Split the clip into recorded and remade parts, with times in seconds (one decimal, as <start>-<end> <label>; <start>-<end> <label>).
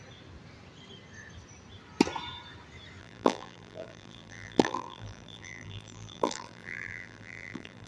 0.0-3.0 recorded; 3.0-7.9 remade